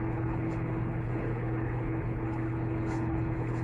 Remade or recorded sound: remade